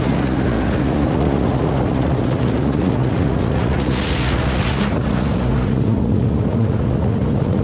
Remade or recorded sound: remade